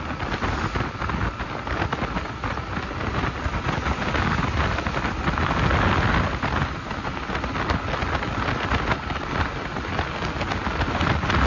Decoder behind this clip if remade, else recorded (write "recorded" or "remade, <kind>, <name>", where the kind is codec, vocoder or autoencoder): recorded